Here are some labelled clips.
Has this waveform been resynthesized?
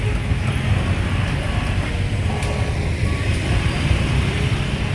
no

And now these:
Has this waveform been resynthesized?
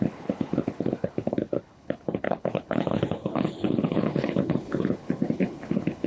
yes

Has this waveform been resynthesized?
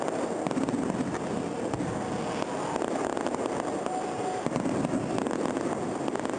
no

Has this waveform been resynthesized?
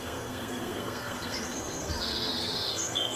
yes